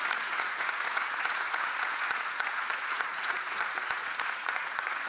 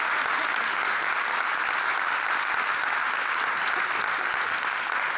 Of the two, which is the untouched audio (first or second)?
second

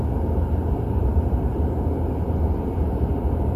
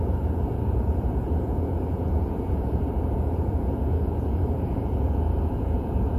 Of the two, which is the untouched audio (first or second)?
first